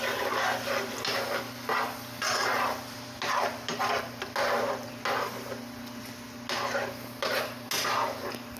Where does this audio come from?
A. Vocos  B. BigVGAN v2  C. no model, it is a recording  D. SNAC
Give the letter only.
C